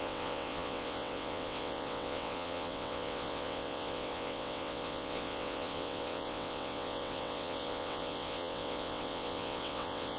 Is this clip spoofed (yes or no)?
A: yes